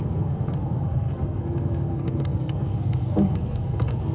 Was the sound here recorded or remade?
remade